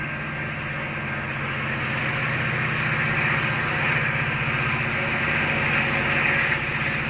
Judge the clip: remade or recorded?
recorded